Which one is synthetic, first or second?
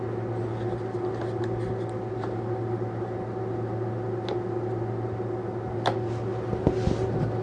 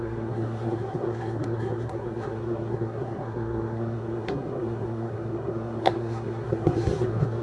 second